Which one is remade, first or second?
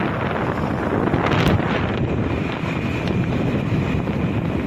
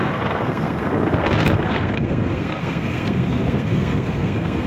second